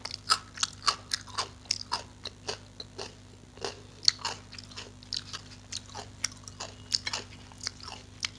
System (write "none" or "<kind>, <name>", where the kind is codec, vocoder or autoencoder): none